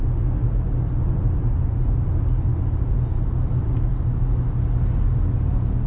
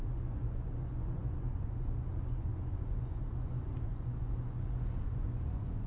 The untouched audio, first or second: first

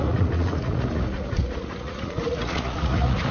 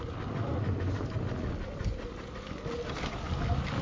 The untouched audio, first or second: second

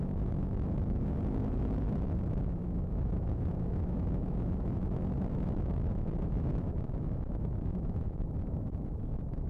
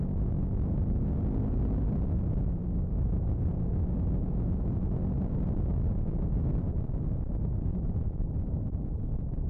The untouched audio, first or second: second